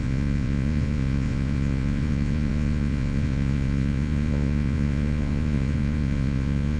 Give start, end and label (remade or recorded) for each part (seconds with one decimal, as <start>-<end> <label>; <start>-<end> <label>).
0.0-6.8 remade